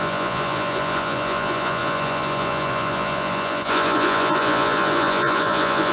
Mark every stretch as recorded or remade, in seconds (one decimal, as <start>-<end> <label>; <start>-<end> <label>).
0.0-5.9 remade